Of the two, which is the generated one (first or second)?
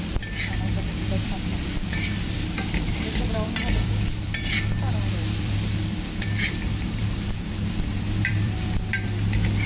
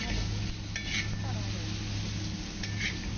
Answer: first